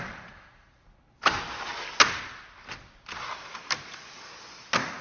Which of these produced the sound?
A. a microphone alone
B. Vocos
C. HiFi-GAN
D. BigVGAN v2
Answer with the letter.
A